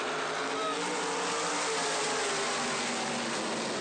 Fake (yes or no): no